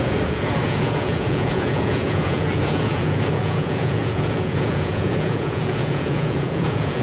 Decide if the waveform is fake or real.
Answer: fake